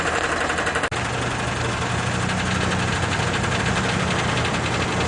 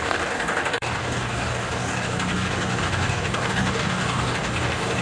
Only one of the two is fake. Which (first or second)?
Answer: second